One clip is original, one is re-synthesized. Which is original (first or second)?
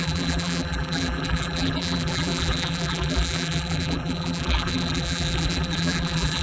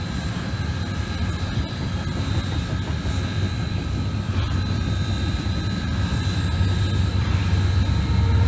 second